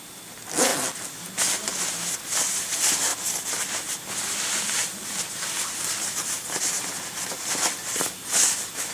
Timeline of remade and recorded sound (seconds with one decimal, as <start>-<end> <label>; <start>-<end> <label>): 0.0-8.9 recorded